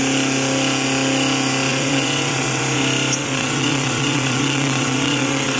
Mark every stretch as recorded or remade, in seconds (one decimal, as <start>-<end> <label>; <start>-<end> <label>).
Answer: 0.0-1.7 recorded; 1.7-2.6 remade; 2.6-3.2 recorded; 3.2-5.6 remade